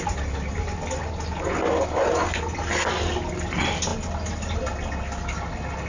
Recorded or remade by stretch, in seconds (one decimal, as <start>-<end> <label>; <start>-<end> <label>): 0.0-5.9 recorded